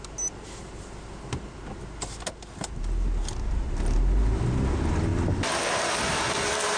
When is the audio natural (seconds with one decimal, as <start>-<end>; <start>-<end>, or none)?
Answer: 0.0-5.1; 5.9-6.8